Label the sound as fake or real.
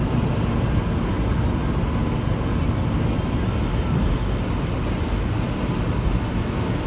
real